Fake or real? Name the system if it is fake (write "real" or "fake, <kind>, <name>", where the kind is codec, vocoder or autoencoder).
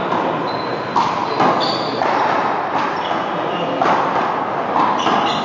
real